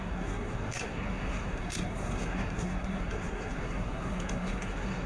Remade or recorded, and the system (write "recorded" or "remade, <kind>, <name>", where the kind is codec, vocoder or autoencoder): remade, codec, SNAC